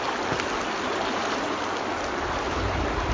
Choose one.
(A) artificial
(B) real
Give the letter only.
B